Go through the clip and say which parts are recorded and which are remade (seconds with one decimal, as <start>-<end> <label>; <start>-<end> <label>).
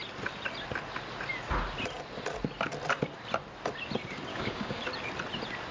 0.0-4.3 recorded; 4.3-4.8 remade; 4.8-5.7 recorded